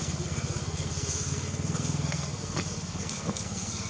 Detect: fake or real fake